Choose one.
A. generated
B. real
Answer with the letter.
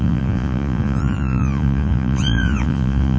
A